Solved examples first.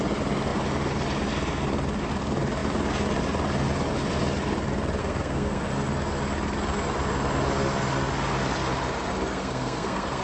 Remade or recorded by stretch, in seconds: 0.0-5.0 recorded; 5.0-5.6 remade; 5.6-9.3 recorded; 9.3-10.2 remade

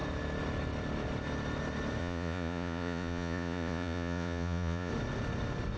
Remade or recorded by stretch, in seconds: 0.0-2.0 recorded; 2.0-4.9 remade; 4.9-5.8 recorded

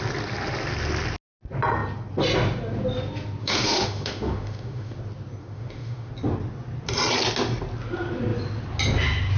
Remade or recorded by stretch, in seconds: 0.0-3.4 recorded; 3.4-5.0 remade; 5.0-5.4 recorded; 5.4-6.1 remade; 6.1-9.4 recorded

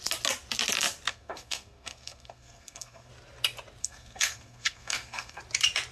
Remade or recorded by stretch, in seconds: 0.0-1.1 recorded; 1.1-3.1 remade; 3.1-3.8 recorded; 3.8-5.4 remade; 5.4-5.9 recorded

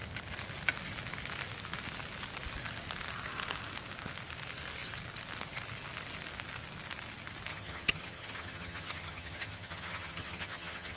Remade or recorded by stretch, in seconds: 0.0-7.5 recorded; 7.5-11.0 remade